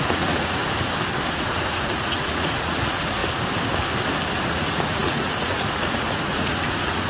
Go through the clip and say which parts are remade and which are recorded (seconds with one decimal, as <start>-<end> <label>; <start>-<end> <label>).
0.0-0.6 remade; 0.6-1.3 recorded; 1.3-3.2 remade; 3.2-4.5 recorded; 4.5-7.1 remade